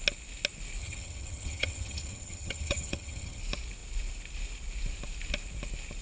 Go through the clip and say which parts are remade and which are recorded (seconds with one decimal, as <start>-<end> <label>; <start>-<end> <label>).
0.0-0.8 recorded; 0.8-3.4 remade; 3.4-6.0 recorded